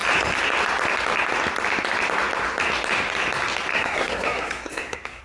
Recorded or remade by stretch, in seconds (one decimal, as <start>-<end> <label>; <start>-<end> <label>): 0.0-3.7 recorded; 3.7-5.2 remade